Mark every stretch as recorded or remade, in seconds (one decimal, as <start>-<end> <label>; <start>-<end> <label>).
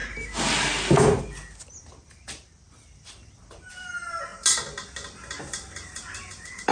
0.0-1.2 recorded; 1.2-4.3 remade; 4.3-5.4 recorded; 5.4-6.7 remade